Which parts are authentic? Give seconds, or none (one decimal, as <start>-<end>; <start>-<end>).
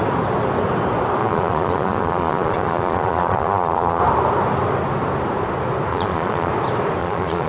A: 0.0-1.2; 4.0-5.9; 6.5-7.0